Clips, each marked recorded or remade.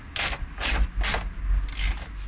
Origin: recorded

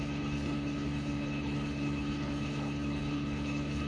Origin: remade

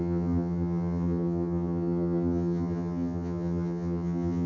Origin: remade